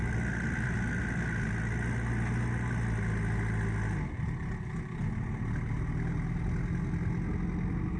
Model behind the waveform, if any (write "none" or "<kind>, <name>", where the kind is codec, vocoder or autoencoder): none